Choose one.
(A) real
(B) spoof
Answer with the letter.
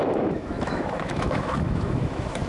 B